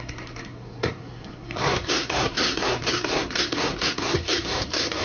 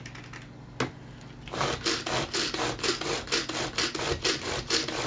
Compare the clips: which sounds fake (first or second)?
first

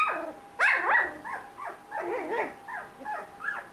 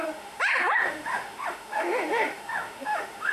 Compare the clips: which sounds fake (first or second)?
second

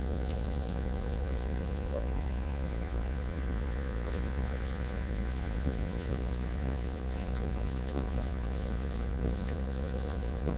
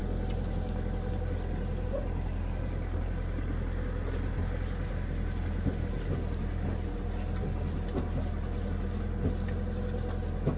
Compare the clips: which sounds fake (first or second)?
first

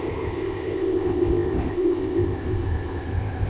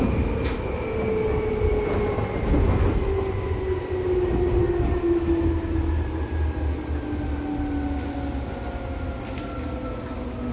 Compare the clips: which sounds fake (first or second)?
first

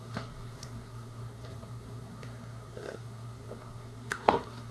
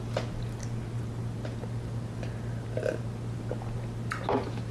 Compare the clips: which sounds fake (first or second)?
first